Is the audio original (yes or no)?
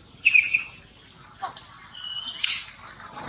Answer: yes